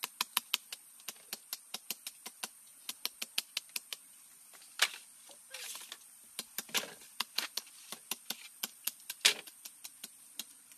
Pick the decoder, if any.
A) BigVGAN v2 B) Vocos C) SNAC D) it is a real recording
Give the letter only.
D